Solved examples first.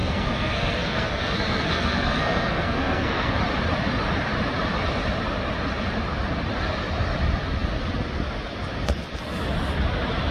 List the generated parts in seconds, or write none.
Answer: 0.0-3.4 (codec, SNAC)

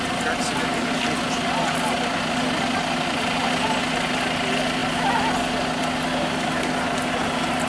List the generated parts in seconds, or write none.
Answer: none

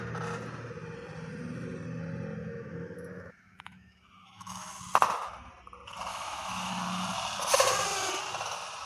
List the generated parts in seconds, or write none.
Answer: 2.4-4.7 (autoencoder, DAC-VAE); 6.1-6.7

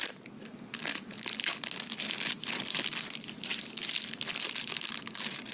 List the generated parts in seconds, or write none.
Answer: none

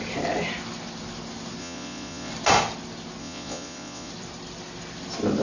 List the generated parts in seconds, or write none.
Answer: 1.6-2.3 (vocoder, Vocos); 3.2-4.1